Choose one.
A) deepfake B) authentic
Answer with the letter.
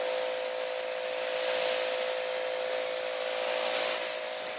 B